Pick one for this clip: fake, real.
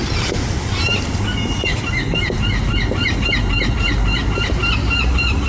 real